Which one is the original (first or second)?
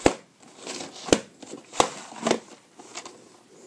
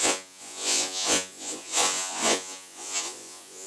first